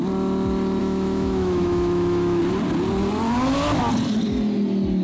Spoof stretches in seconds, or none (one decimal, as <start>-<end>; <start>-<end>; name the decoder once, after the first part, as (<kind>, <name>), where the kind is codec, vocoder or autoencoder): 0.8-2.4 (autoencoder, DAC-VAE)